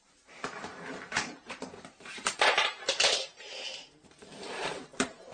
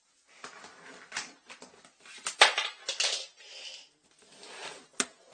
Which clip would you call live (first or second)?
second